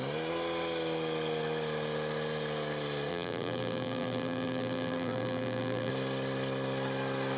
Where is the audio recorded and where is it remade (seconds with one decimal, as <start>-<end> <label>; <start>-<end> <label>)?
0.0-3.1 recorded; 3.1-5.9 remade; 5.9-7.4 recorded